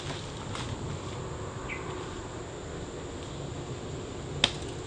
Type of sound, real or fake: real